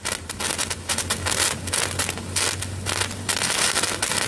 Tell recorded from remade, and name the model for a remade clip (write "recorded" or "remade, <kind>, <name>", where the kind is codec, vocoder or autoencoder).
recorded